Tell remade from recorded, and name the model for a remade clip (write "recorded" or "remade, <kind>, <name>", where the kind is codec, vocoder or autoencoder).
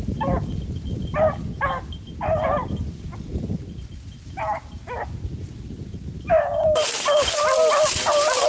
recorded